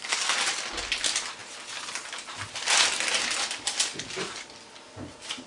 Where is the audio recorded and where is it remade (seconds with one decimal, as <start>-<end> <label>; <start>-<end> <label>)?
0.0-5.5 recorded